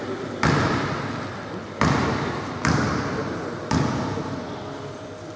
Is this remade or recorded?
remade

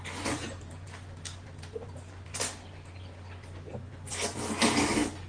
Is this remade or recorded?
recorded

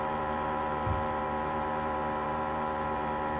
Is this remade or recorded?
remade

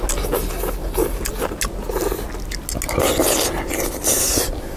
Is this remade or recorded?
recorded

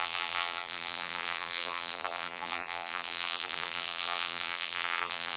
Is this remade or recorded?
remade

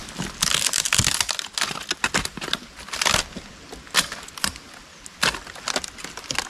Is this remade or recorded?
recorded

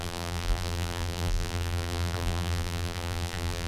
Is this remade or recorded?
remade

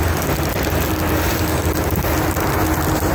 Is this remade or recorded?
recorded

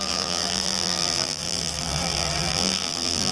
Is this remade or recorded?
remade